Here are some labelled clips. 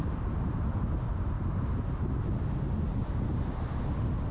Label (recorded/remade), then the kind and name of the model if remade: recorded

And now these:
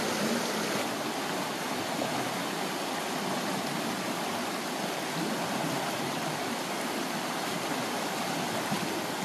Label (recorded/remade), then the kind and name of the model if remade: recorded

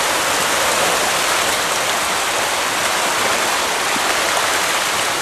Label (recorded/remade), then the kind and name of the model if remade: recorded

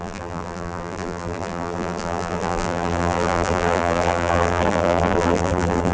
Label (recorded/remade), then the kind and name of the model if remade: remade, vocoder, BigVGAN v2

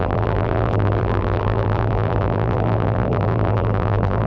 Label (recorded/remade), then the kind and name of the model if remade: remade, vocoder, BigVGAN v2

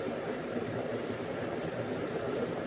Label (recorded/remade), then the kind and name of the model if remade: remade, vocoder, BigVGAN v2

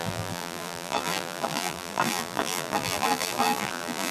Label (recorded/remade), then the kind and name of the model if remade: remade, vocoder, BigVGAN v2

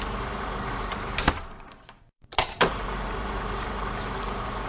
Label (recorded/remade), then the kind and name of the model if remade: remade, vocoder, BigVGAN v2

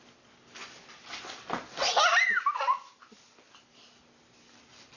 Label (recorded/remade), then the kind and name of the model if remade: recorded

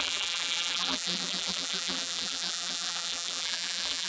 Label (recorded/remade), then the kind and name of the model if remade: remade, vocoder, BigVGAN v2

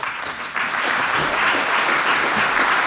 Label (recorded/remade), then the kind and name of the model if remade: recorded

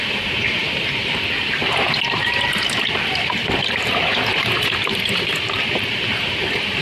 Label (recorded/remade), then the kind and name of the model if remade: remade, vocoder, BigVGAN v2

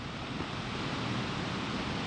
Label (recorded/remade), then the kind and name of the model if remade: remade, vocoder, BigVGAN v2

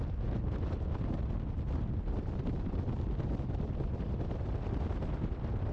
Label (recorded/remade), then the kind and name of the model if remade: recorded